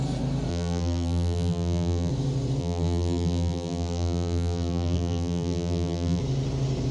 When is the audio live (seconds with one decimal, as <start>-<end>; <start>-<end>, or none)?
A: 0.0-0.5; 2.1-2.6; 6.2-6.9